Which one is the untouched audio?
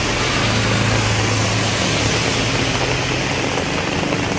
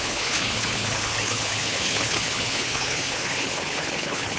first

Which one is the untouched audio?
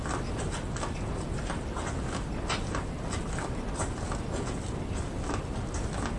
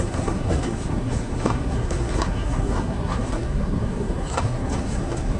first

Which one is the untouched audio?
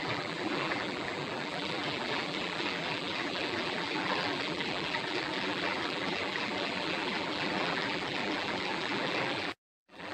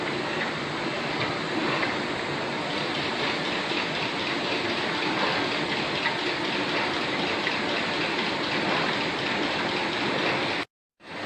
second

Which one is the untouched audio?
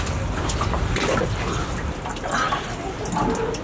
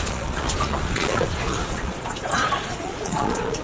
first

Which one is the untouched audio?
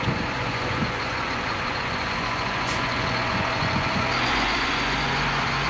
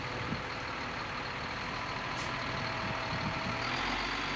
second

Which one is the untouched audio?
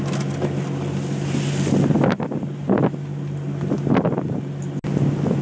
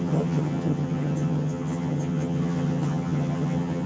first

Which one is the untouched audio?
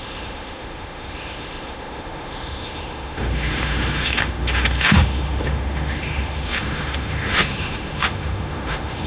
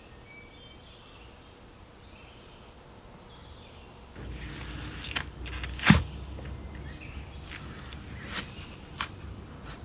second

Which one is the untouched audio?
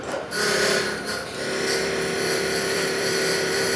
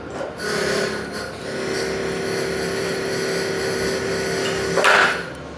second